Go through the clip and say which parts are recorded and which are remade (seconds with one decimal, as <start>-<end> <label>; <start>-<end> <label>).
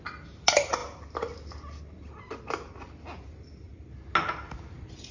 0.0-5.1 recorded